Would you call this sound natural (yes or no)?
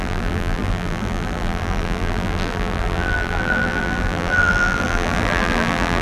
no